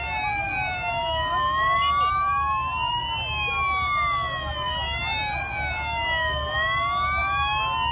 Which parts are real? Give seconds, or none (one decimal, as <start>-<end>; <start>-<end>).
0.0-7.9